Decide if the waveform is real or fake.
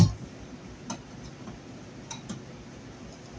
real